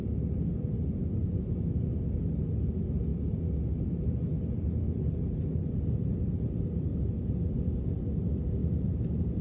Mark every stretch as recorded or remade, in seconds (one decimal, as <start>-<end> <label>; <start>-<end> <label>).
0.0-6.9 recorded; 6.9-8.0 remade; 8.0-8.6 recorded; 8.6-9.4 remade